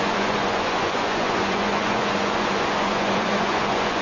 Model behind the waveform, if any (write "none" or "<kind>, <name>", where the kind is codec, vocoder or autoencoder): vocoder, Vocos